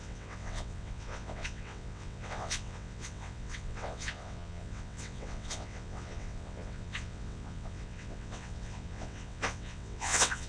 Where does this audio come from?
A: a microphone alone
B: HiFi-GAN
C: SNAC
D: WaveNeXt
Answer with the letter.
D